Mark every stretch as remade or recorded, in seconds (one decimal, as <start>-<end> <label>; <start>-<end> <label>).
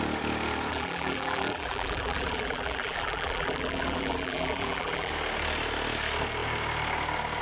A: 0.0-0.7 recorded; 0.7-5.1 remade; 5.1-7.4 recorded